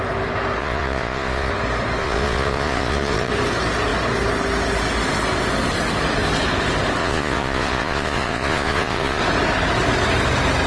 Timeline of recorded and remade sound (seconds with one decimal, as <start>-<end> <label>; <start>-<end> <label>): 0.0-0.6 recorded; 0.6-1.5 remade; 1.5-2.0 recorded; 2.0-3.3 remade; 3.3-7.0 recorded; 7.0-9.2 remade; 9.2-10.7 recorded